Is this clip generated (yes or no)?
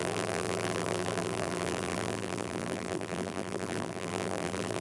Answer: yes